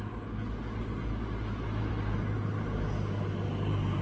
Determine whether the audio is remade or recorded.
recorded